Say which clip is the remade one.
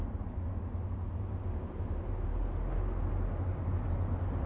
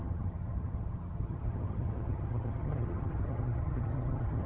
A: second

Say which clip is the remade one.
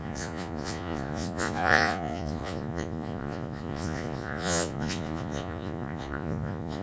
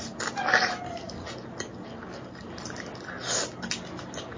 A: first